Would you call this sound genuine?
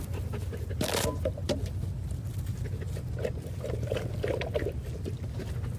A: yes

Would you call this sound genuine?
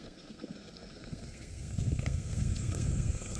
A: no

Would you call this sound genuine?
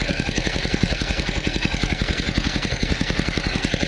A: no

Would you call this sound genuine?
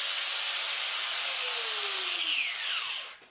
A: yes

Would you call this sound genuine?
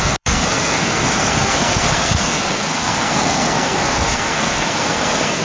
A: no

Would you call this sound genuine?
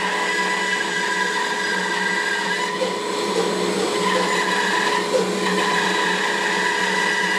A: yes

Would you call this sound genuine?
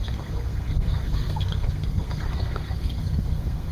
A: no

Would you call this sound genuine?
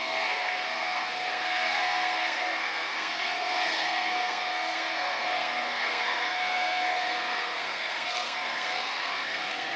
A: no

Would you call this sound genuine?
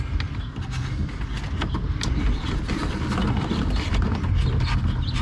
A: yes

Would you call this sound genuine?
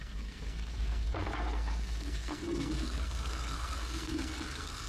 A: no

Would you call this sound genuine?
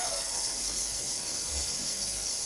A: no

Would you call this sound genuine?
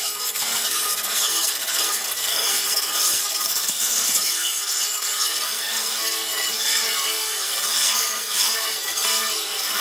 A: no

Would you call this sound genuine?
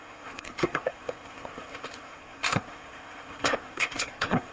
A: no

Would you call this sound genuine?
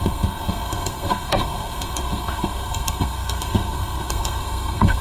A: no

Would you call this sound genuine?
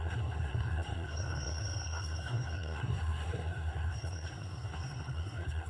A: no